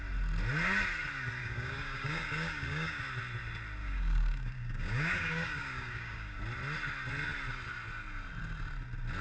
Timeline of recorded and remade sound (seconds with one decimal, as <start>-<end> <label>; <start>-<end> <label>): 0.0-1.4 recorded; 1.4-3.0 remade; 3.0-3.8 recorded; 3.8-6.4 remade; 6.4-9.2 recorded